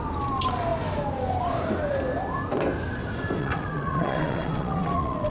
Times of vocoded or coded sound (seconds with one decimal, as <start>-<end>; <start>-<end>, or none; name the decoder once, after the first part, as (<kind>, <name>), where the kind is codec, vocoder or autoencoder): 3.4-5.3 (vocoder, WaveNeXt)